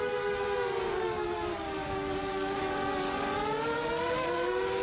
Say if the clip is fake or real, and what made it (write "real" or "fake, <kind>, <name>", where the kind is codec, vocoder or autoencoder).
fake, codec, DAC